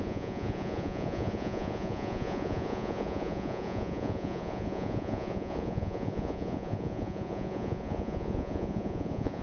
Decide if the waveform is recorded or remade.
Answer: remade